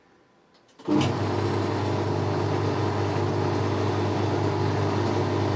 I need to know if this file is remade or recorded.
recorded